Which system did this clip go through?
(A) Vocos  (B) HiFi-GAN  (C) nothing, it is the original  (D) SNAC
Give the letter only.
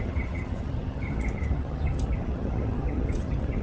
B